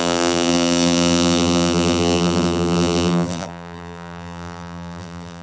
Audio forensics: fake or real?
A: fake